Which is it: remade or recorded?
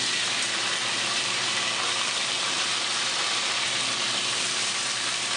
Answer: remade